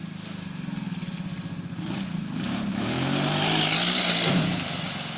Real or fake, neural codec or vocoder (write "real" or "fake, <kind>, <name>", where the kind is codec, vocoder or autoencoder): real